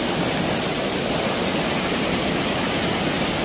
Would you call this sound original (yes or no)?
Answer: yes